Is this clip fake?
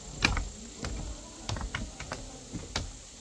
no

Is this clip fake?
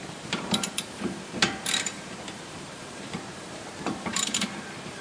yes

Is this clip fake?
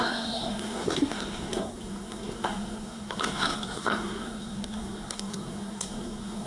yes